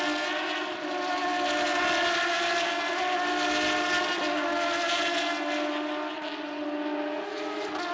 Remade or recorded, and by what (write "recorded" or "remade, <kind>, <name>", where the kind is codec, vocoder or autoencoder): recorded